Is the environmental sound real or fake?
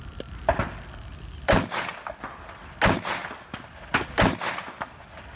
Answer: real